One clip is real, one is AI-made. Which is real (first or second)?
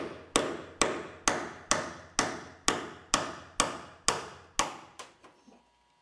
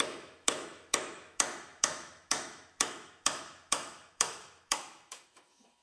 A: first